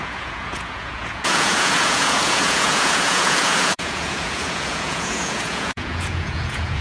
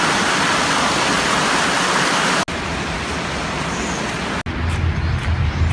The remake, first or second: first